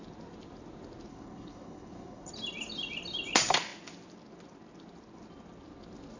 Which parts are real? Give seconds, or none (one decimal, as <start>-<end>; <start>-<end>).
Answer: 0.0-1.1; 2.3-6.2